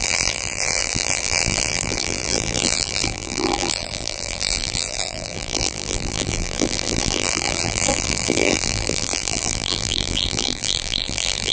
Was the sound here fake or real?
fake